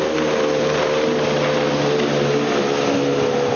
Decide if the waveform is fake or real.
real